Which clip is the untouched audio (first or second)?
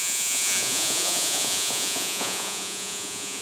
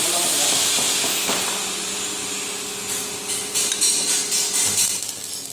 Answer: second